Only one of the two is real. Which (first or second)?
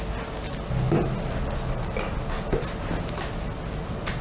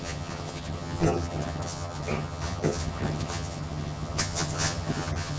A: first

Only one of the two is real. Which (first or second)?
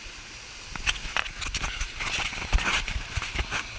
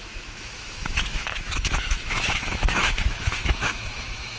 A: first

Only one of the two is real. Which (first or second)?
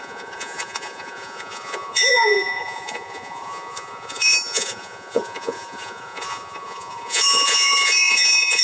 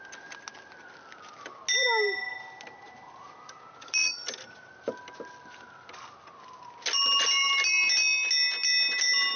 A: second